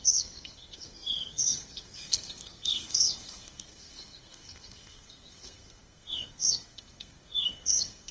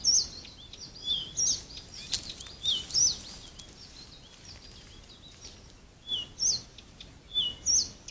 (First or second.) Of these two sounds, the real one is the second